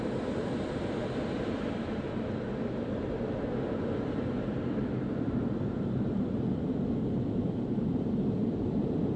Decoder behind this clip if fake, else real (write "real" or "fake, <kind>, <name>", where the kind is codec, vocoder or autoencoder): fake, vocoder, BigVGAN v2